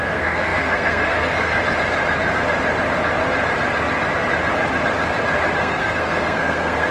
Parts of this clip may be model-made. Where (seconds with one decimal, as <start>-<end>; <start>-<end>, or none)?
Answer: 0.0-1.6; 5.6-6.9